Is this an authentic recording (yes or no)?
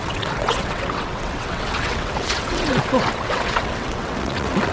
no